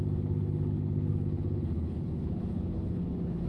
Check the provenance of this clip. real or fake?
fake